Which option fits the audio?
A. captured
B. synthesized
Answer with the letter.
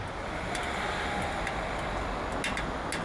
A